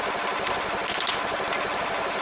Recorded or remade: recorded